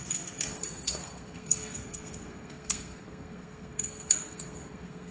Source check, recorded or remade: remade